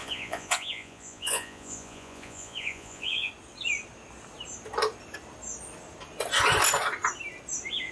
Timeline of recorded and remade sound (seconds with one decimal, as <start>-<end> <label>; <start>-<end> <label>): 0.0-3.3 remade; 3.3-7.9 recorded